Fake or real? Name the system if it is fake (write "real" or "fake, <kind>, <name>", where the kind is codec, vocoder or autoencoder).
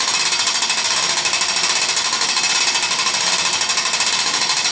real